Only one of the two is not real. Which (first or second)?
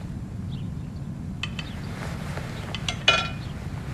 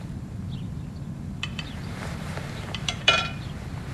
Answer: second